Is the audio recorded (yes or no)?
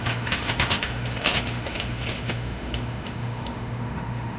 no